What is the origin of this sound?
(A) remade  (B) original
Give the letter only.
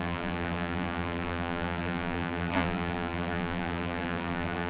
A